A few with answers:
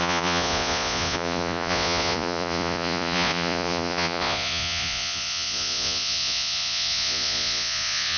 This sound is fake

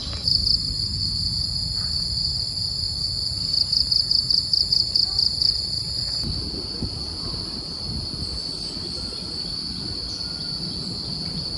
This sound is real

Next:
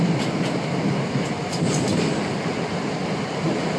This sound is real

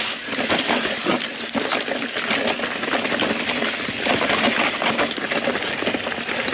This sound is real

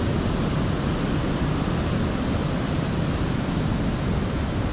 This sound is real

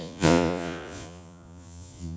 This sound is fake